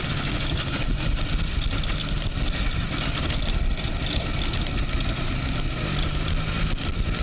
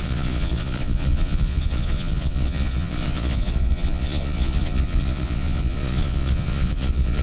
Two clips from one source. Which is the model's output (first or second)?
second